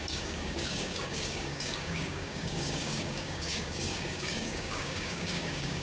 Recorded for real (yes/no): no